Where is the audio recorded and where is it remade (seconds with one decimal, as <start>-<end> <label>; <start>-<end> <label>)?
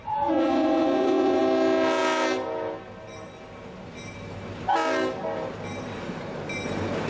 0.0-1.4 remade; 1.4-7.1 recorded